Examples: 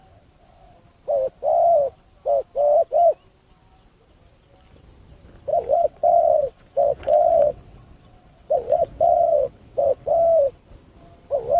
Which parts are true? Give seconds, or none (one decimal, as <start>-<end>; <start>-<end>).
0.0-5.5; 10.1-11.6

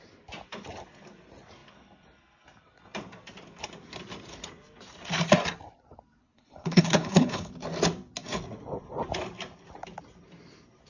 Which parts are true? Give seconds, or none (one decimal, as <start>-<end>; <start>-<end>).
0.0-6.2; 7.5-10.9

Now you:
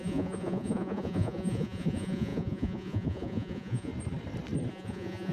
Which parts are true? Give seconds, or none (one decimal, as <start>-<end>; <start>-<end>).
3.9-4.7

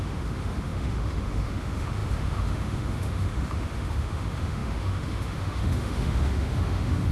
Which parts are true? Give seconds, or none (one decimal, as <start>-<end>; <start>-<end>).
none

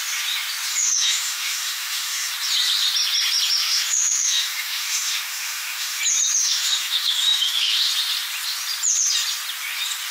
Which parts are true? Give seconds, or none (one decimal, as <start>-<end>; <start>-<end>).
0.0-0.7; 2.3-3.6; 6.0-6.4; 7.9-10.1